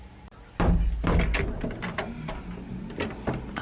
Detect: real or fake real